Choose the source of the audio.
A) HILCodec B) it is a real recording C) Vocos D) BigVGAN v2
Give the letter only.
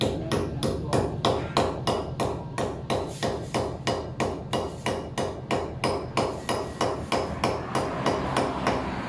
B